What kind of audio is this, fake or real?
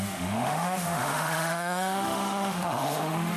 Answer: fake